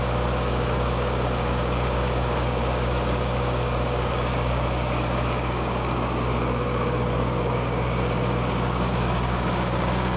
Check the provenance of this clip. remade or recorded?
remade